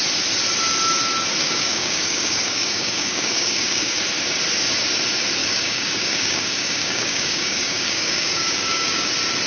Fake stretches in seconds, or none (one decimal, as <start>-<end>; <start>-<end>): 1.4-4.0; 5.4-9.1